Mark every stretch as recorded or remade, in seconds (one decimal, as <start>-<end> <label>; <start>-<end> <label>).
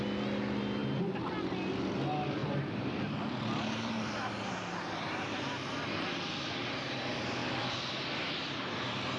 0.0-2.4 recorded; 2.4-6.7 remade; 6.7-7.4 recorded; 7.4-7.9 remade; 7.9-9.2 recorded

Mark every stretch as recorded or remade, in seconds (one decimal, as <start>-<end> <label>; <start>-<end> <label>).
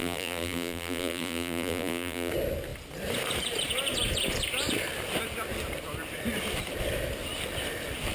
0.0-2.3 remade; 2.3-8.1 recorded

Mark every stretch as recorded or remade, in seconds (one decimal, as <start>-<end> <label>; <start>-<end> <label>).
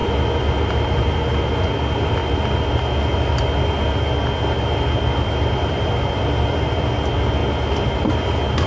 0.0-8.7 recorded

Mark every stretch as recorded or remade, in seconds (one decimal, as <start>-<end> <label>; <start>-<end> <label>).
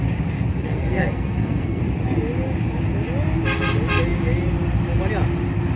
0.0-0.5 recorded; 0.5-1.8 remade; 1.8-5.8 recorded